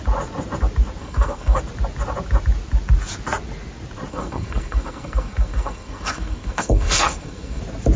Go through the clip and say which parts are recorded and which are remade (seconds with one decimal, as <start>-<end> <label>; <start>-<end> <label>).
0.0-1.0 recorded; 1.0-1.6 remade; 1.6-4.1 recorded; 4.1-7.6 remade; 7.6-8.0 recorded